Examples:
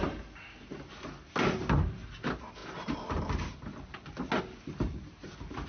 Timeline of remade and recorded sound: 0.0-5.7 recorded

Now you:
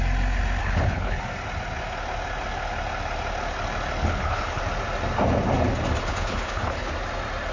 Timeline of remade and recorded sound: 0.0-0.6 recorded; 0.6-1.2 remade; 1.2-4.0 recorded; 4.0-4.6 remade; 4.6-6.0 recorded; 6.0-6.9 remade; 6.9-7.5 recorded

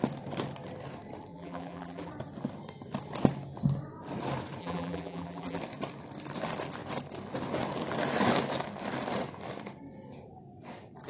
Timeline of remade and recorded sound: 0.0-1.3 recorded; 1.3-2.1 remade; 2.1-4.6 recorded; 4.6-5.6 remade; 5.6-11.1 recorded

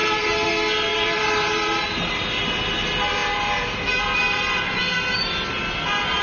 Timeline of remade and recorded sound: 0.0-0.5 remade; 0.5-0.9 recorded; 0.9-2.1 remade; 2.1-6.2 recorded

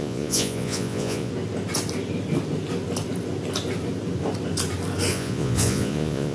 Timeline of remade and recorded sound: 0.0-1.3 remade; 1.3-5.1 recorded; 5.1-6.3 remade